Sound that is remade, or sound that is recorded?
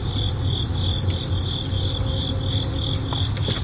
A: recorded